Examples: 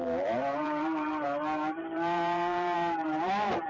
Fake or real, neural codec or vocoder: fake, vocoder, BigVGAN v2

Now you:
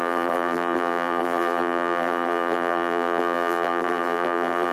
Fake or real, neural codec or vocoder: fake, vocoder, BigVGAN v2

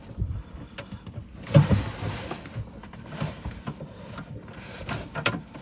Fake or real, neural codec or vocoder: fake, vocoder, BigVGAN v2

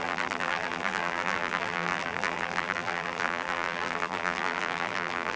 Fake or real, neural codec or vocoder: fake, vocoder, BigVGAN v2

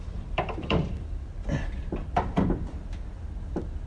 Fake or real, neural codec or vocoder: fake, vocoder, BigVGAN v2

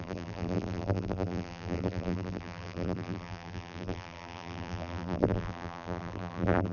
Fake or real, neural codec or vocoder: fake, vocoder, BigVGAN v2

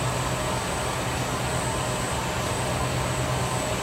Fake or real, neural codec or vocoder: real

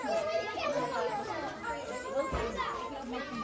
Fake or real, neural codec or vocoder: real